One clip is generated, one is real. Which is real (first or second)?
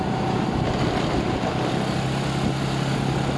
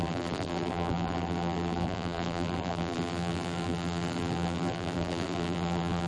first